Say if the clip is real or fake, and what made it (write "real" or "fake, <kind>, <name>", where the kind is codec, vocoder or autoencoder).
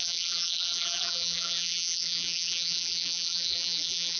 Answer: fake, vocoder, BigVGAN v2